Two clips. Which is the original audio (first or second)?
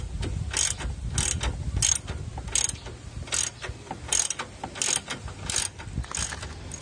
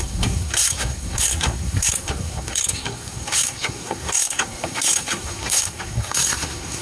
first